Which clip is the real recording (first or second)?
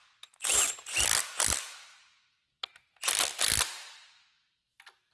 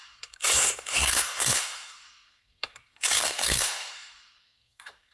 first